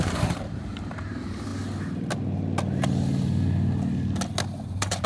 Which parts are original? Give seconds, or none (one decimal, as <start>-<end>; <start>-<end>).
1.5-4.6